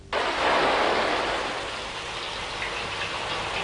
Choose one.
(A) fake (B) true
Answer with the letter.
B